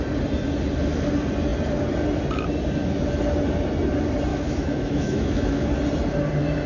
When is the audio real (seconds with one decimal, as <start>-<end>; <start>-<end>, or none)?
0.0-4.3; 5.7-6.7